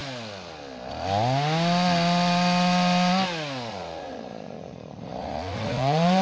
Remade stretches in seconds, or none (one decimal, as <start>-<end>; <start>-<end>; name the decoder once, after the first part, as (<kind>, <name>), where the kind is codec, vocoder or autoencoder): 3.7-6.2 (vocoder, Vocos)